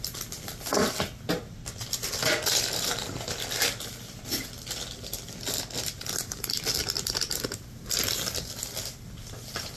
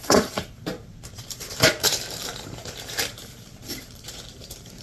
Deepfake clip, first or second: second